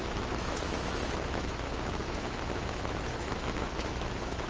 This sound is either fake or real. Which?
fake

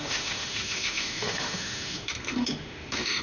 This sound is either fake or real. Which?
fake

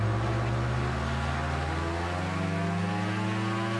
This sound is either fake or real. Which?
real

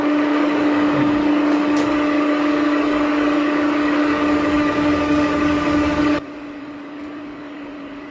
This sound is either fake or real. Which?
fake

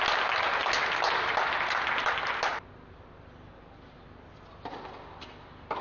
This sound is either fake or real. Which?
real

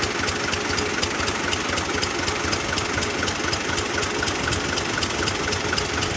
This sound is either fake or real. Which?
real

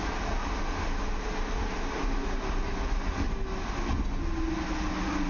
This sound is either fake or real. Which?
real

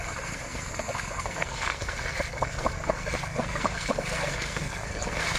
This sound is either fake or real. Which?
fake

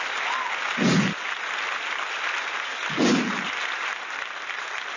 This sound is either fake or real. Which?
real